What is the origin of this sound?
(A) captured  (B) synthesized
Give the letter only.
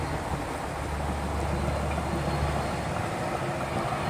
A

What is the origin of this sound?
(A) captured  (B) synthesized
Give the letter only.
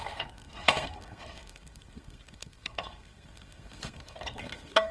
B